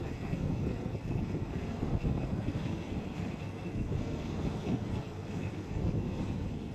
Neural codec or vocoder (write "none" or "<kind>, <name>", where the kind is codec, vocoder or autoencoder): codec, SNAC